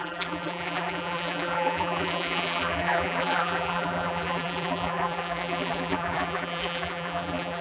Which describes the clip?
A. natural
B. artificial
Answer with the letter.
B